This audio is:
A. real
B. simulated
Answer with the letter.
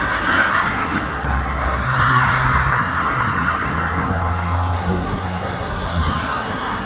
B